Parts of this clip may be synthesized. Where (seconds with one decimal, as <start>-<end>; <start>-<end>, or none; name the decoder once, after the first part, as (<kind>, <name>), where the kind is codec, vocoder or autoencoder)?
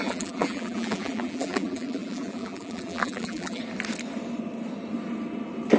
0.0-3.6 (vocoder, BigVGAN v2)